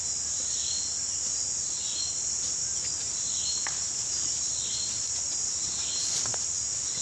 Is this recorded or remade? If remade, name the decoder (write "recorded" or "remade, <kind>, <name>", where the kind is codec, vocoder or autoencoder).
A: recorded